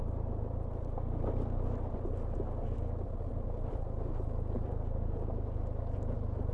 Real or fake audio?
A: real